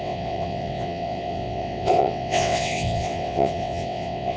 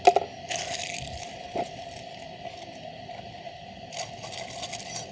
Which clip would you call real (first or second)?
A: second